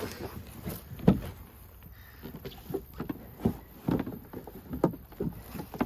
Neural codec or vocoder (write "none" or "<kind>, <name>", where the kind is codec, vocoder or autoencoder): none